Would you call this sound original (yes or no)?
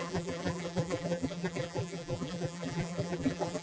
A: no